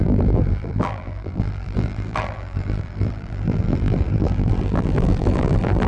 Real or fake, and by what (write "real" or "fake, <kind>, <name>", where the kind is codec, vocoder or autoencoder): fake, vocoder, BigVGAN v2